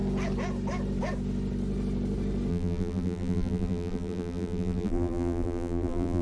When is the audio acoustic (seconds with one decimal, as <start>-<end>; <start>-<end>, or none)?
0.0-2.5